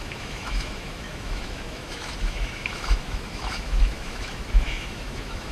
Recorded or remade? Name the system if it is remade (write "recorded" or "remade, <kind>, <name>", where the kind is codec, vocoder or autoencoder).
remade, autoencoder, DAC-VAE